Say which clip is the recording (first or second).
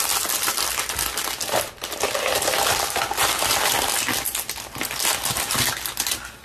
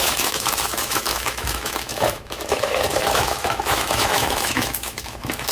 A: first